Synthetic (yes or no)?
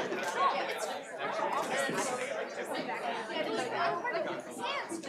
no